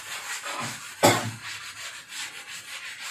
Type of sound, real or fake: real